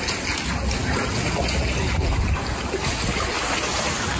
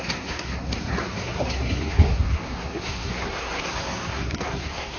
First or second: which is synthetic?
second